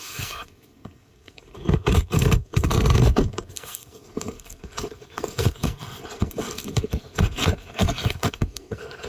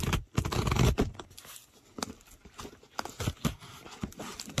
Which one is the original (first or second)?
second